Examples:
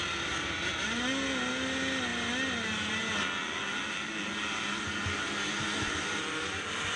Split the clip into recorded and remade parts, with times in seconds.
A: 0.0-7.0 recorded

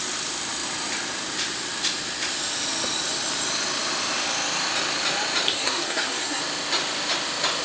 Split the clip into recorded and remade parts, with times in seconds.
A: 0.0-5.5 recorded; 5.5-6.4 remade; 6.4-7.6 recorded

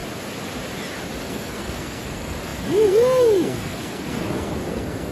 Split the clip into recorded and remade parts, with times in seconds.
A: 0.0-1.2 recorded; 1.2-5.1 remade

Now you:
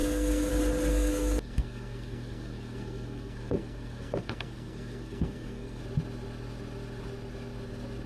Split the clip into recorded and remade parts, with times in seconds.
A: 0.0-0.5 remade; 0.5-0.9 recorded; 0.9-5.8 remade; 5.8-8.1 recorded

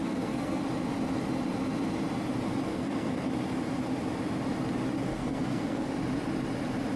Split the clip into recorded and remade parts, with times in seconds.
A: 0.0-0.6 remade; 0.6-2.7 recorded; 2.7-3.3 remade; 3.3-5.1 recorded; 5.1-5.9 remade; 5.9-7.0 recorded

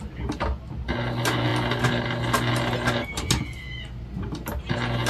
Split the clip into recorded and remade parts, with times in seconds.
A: 0.0-5.1 recorded

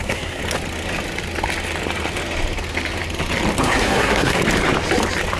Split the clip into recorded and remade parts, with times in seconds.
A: 0.0-0.4 remade; 0.4-3.6 recorded; 3.6-4.4 remade; 4.4-5.4 recorded

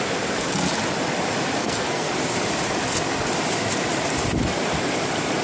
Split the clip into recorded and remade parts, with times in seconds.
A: 0.0-1.6 recorded; 1.6-2.1 remade; 2.1-5.4 recorded